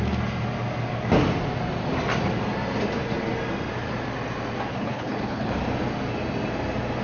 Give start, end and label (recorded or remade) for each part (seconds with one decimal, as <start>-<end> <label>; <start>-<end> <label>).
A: 0.0-4.7 recorded; 4.7-5.5 remade; 5.5-7.0 recorded

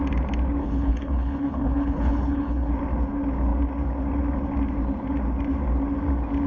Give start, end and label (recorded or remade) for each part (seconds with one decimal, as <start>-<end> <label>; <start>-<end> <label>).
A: 0.0-0.6 recorded; 0.6-2.7 remade; 2.7-6.5 recorded

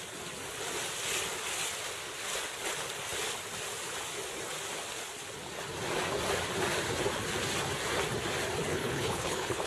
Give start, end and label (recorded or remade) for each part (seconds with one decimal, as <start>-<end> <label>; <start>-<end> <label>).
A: 0.0-8.7 recorded; 8.7-9.7 remade

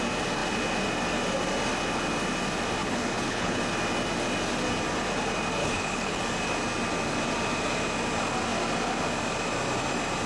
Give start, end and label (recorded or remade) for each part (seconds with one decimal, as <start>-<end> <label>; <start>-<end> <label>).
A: 0.0-2.8 recorded; 2.8-3.6 remade; 3.6-5.6 recorded; 5.6-6.2 remade; 6.2-10.3 recorded

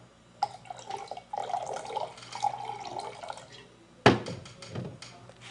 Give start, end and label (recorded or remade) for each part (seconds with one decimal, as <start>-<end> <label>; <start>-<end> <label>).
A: 0.0-5.5 recorded

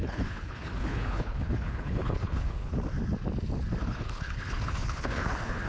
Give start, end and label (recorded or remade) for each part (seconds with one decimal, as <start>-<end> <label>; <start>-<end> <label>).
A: 0.0-2.7 remade; 2.7-3.8 recorded; 3.8-5.7 remade